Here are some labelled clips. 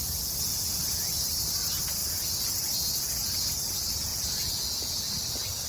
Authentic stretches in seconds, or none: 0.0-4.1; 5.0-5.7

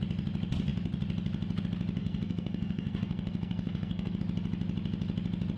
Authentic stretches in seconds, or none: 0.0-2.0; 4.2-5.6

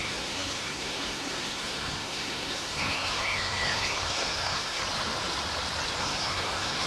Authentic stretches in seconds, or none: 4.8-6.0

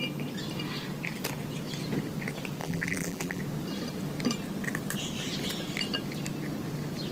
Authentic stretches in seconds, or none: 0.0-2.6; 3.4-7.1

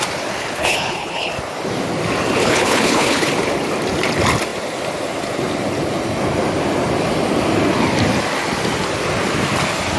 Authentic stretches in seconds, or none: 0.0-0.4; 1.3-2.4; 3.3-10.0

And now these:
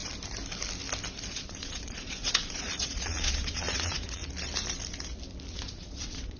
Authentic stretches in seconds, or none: 0.0-1.3; 4.2-5.5

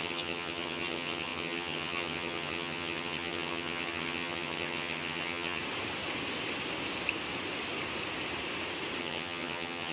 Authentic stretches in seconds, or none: 5.6-9.0

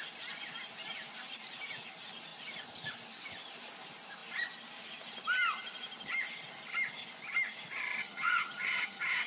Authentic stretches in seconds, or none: 0.0-8.0